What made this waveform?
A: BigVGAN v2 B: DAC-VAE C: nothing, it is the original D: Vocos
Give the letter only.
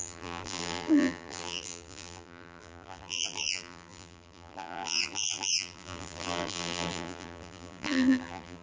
A